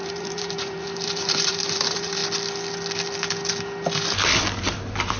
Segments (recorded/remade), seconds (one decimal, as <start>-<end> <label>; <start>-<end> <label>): 0.0-2.2 remade; 2.2-4.6 recorded; 4.6-5.2 remade